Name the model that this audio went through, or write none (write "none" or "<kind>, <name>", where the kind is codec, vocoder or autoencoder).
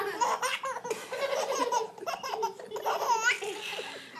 none